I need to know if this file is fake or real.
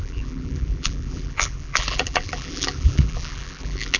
fake